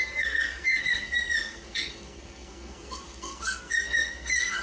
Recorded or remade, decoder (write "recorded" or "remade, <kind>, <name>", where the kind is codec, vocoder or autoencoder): remade, codec, SNAC